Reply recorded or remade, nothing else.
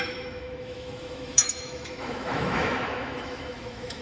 remade